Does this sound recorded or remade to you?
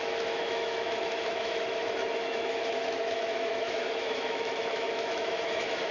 remade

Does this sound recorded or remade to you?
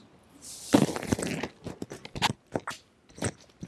recorded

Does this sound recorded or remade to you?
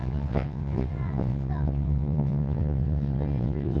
remade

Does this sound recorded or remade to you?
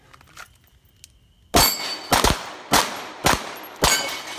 recorded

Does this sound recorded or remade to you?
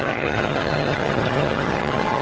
remade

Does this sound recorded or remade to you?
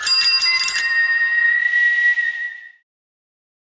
recorded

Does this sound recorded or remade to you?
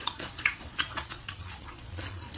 remade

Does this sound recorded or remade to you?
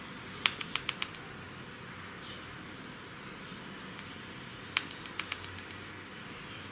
recorded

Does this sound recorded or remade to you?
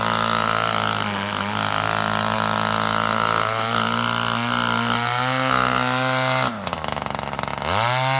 recorded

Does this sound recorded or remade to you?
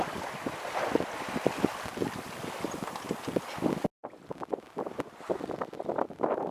recorded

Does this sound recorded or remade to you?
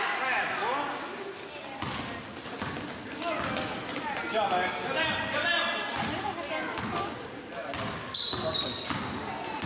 recorded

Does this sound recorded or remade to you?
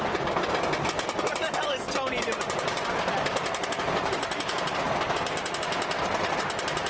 recorded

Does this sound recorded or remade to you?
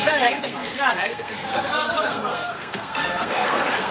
remade